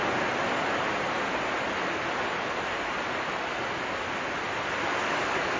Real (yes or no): yes